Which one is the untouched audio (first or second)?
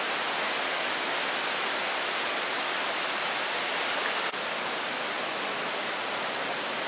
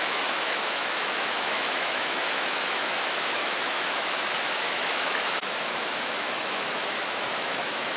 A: first